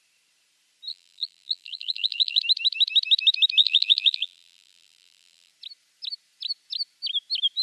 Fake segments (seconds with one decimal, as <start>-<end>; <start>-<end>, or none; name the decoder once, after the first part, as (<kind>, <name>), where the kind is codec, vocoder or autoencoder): 0.9-2.4 (vocoder, BigVGAN v2); 3.6-5.5